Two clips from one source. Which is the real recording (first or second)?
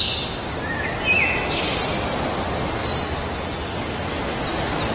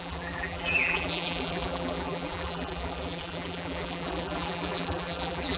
first